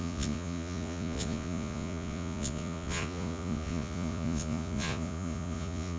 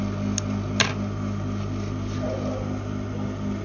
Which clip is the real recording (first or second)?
second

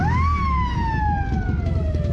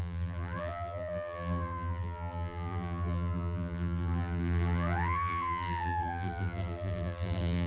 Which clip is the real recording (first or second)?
first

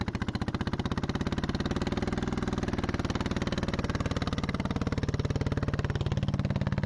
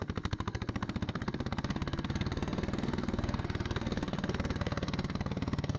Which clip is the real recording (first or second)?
first